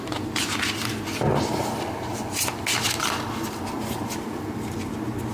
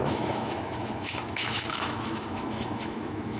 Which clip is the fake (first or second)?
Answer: second